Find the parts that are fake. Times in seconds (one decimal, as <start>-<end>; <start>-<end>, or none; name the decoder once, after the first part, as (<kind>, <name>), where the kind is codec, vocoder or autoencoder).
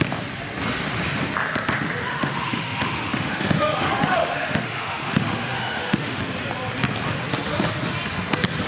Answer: 2.1-6.2 (autoencoder, DAC-VAE)